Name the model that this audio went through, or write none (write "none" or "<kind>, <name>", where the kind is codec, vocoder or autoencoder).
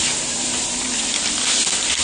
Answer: none